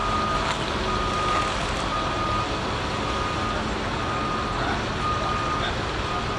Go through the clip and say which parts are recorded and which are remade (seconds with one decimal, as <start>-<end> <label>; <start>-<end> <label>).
0.0-6.4 recorded